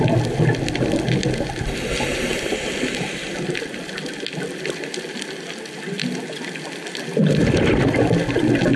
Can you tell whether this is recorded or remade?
recorded